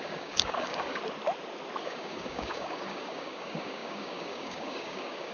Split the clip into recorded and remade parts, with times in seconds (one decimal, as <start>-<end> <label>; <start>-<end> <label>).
0.0-1.0 remade; 1.0-1.8 recorded; 1.8-5.3 remade